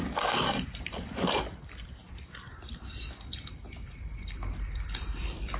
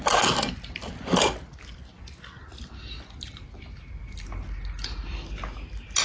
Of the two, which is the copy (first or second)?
first